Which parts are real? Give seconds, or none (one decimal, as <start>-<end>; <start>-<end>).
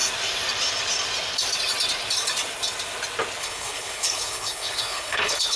0.0-3.4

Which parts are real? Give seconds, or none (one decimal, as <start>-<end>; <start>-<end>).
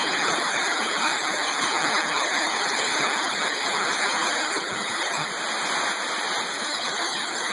5.3-6.5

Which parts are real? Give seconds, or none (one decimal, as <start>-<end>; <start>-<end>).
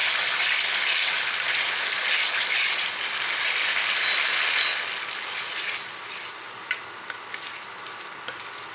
0.0-8.7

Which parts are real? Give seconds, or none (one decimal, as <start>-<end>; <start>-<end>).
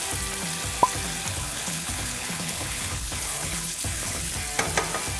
0.0-1.3; 4.3-5.2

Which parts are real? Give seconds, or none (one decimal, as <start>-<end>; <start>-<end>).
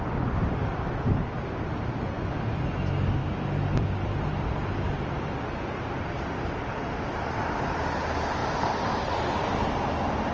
0.0-10.3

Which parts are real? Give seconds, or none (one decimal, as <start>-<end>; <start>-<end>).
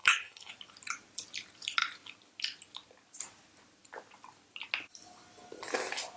0.5-6.2